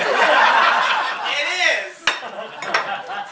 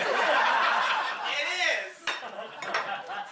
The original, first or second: first